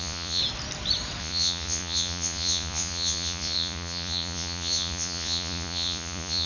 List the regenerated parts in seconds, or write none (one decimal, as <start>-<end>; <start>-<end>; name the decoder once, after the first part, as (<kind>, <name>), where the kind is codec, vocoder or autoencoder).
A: 0.0-0.4 (vocoder, Vocos); 1.2-6.5